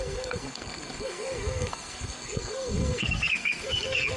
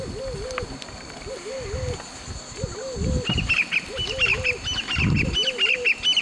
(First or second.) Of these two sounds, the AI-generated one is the first